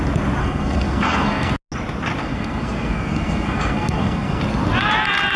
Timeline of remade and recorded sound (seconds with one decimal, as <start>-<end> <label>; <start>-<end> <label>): 0.0-0.4 recorded; 0.4-1.5 remade; 1.5-2.2 recorded; 2.2-4.4 remade; 4.4-5.4 recorded